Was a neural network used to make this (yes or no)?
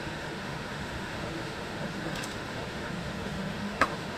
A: yes